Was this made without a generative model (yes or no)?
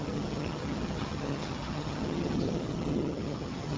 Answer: no